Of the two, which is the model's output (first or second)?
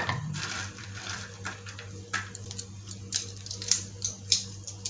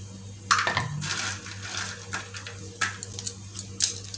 first